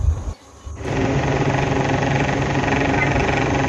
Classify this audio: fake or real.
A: real